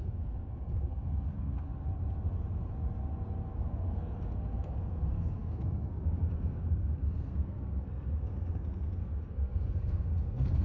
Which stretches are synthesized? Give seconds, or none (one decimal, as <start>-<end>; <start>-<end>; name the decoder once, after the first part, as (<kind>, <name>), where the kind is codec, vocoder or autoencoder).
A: 0.0-1.7 (codec, SNAC); 3.6-10.6